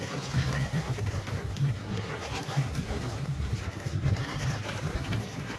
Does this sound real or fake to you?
fake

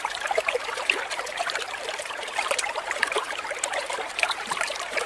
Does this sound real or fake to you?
fake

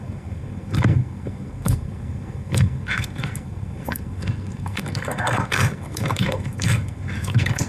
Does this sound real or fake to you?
fake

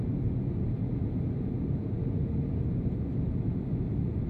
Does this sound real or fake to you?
real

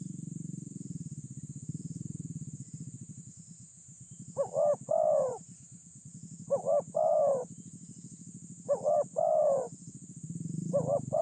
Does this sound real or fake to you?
fake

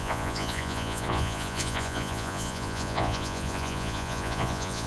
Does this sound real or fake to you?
fake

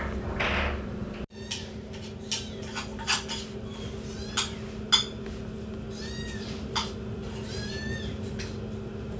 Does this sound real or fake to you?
real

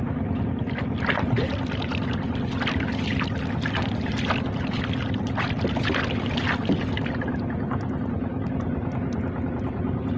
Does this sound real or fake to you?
real